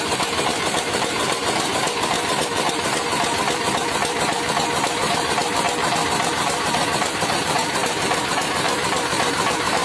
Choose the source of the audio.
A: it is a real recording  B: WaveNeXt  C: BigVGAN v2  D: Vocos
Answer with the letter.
C